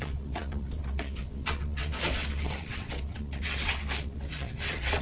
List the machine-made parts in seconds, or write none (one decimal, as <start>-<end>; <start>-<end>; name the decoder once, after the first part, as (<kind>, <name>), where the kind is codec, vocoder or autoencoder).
0.0-5.0 (vocoder, WaveNeXt)